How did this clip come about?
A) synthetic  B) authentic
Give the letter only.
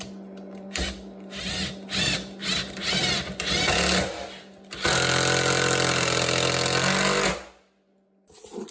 B